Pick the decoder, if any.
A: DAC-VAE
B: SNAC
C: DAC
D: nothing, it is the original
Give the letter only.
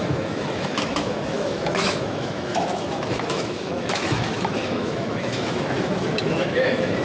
A